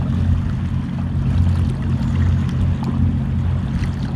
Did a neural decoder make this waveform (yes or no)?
no